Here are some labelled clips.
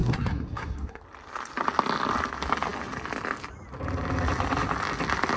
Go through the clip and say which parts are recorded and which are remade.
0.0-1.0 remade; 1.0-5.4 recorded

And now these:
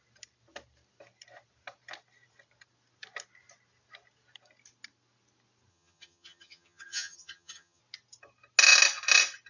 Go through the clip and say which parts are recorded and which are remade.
0.0-5.7 recorded; 5.7-7.8 remade; 7.8-9.5 recorded

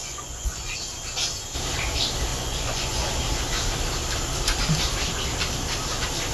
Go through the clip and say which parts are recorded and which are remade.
0.0-0.8 remade; 0.8-2.3 recorded; 2.3-3.1 remade; 3.1-6.3 recorded

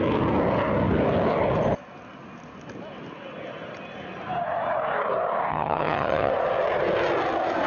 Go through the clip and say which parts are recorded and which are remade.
0.0-5.5 recorded; 5.5-6.3 remade; 6.3-7.7 recorded

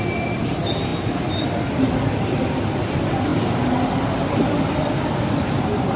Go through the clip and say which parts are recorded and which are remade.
0.0-6.0 recorded

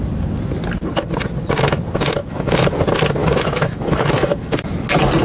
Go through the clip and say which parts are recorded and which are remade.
0.0-2.2 recorded; 2.2-2.7 remade; 2.7-3.2 recorded; 3.2-4.7 remade; 4.7-5.2 recorded

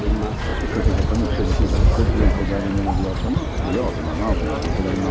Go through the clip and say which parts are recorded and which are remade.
0.0-5.1 recorded

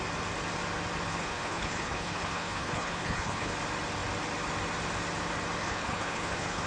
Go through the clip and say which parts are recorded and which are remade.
0.0-1.1 recorded; 1.1-3.5 remade; 3.5-5.6 recorded; 5.6-6.7 remade